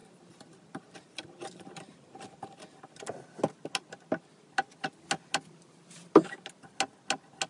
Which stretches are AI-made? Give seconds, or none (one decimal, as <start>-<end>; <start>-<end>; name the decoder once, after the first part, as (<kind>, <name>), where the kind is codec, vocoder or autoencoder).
0.0-2.9 (vocoder, BigVGAN v2)